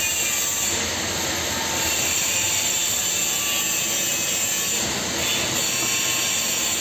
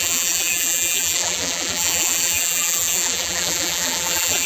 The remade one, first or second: second